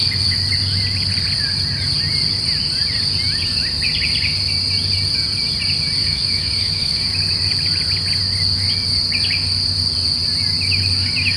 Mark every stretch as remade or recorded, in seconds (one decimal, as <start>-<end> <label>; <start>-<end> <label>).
0.0-6.0 recorded; 6.0-7.0 remade; 7.0-11.4 recorded